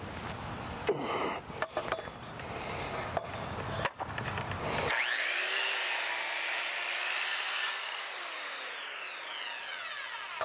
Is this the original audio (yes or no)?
yes